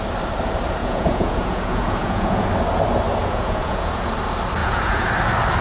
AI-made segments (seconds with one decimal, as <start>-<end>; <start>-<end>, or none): 0.8-2.5; 3.2-4.1; 4.6-5.1